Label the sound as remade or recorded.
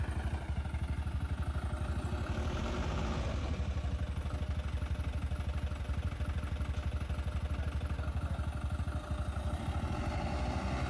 recorded